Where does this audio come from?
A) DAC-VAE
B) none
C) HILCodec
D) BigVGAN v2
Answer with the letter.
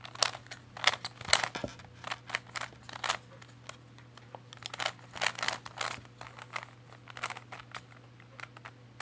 B